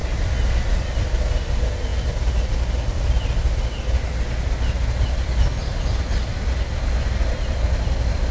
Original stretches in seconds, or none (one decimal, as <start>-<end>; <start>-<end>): 0.0-8.3